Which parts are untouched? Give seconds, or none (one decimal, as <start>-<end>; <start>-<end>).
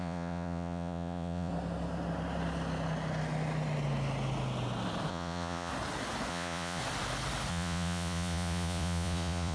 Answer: 1.5-5.1; 5.7-6.3; 6.8-7.5